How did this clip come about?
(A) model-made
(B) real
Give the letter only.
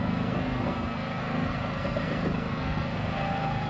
A